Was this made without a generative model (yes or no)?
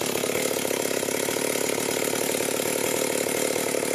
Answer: yes